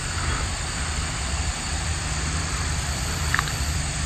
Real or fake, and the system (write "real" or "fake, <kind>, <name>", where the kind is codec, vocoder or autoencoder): fake, vocoder, BigVGAN v2